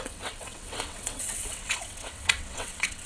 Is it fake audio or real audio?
fake